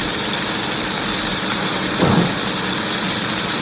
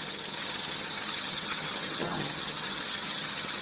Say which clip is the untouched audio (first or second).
first